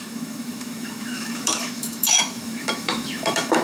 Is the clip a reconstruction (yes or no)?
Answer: yes